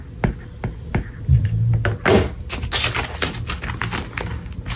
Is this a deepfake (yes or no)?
no